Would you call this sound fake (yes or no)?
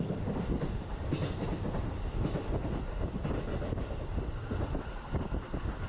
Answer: no